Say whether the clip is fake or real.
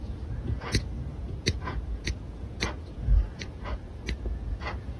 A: fake